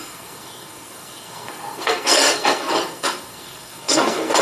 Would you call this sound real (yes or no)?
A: no